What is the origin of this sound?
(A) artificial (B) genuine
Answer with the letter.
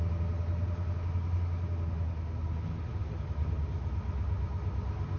B